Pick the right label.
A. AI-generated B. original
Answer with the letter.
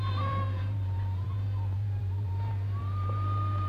A